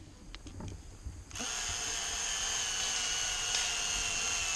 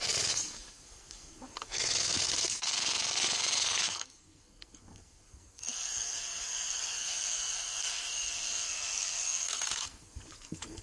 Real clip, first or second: first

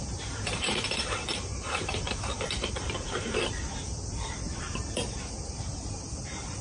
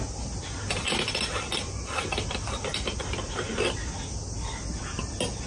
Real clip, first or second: second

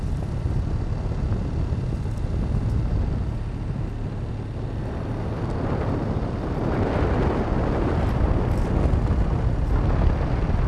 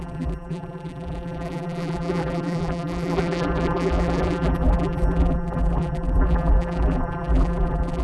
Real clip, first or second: first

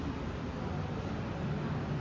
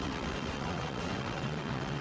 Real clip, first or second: first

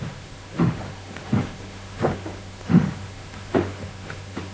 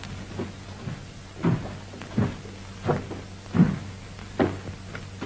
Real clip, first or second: second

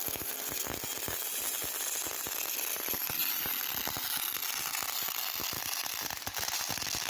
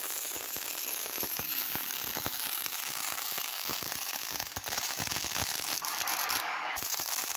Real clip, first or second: first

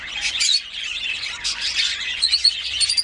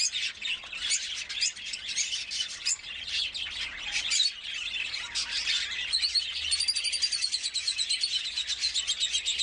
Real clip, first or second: second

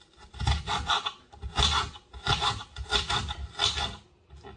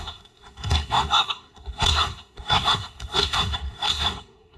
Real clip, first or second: first